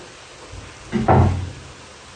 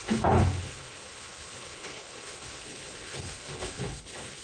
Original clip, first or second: first